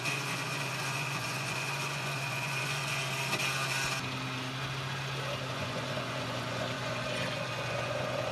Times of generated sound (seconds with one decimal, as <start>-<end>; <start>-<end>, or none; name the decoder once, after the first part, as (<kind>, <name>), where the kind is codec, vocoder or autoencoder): 0.0-3.0 (vocoder, Vocos); 5.5-8.3